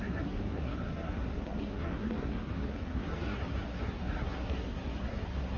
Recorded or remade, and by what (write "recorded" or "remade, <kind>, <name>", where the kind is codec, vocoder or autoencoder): remade, codec, SNAC